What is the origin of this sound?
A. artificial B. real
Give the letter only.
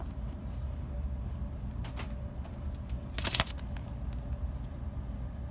B